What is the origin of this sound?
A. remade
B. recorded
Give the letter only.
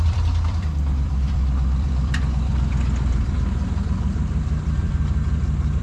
A